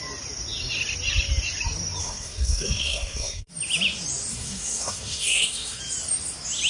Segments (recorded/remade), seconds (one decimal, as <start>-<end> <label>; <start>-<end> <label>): 0.0-2.0 recorded; 2.0-3.5 remade; 3.5-4.3 recorded; 4.3-5.8 remade; 5.8-6.7 recorded